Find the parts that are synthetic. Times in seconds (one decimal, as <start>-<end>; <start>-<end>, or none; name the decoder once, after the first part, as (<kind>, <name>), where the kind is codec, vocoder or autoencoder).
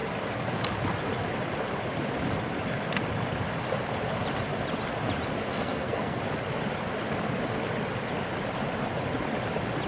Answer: 5.5-6.2 (codec, SNAC)